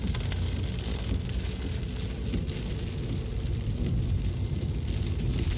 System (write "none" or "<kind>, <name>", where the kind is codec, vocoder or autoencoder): none